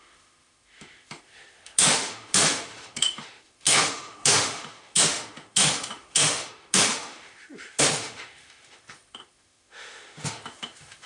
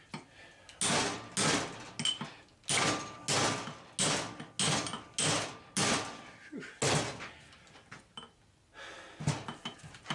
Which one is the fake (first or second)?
first